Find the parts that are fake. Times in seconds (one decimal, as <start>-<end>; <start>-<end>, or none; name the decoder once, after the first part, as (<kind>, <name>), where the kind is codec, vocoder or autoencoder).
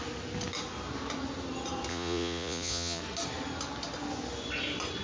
1.9-3.0 (vocoder, Vocos)